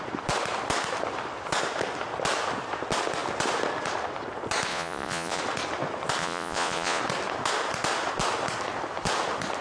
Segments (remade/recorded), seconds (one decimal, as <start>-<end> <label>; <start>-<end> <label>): 0.0-4.7 recorded; 4.7-5.4 remade; 5.4-6.2 recorded; 6.2-7.0 remade; 7.0-9.6 recorded